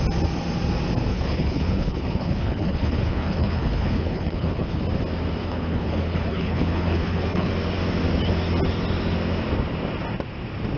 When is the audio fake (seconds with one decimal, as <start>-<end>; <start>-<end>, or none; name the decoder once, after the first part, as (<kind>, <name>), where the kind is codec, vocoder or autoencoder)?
1.1-4.8 (codec, HILCodec); 5.4-7.5